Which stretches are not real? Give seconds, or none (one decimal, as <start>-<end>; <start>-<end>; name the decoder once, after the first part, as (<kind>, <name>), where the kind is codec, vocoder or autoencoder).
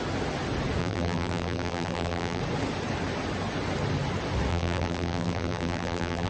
0.8-2.4 (vocoder, BigVGAN v2); 4.5-6.3